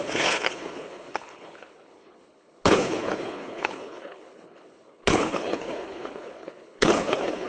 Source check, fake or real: fake